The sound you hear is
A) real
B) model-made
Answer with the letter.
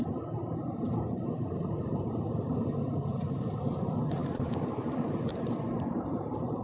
B